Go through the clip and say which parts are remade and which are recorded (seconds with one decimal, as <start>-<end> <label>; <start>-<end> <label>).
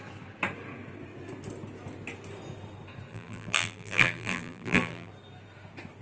0.0-3.1 recorded; 3.1-5.1 remade; 5.1-6.0 recorded